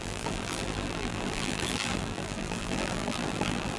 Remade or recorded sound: remade